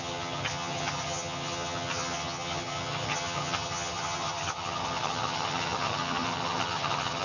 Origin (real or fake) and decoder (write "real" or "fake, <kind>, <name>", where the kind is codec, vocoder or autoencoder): fake, vocoder, HiFi-GAN